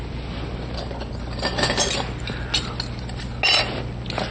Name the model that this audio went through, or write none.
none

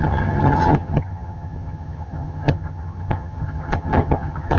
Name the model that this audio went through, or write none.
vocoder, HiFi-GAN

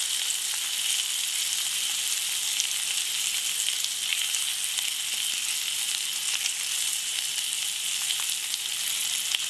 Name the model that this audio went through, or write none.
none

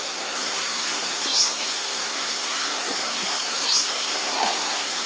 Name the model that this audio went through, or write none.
codec, SNAC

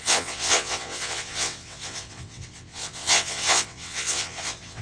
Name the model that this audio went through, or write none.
vocoder, WaveNeXt